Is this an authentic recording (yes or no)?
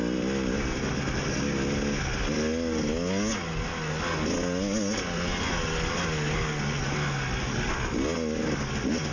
yes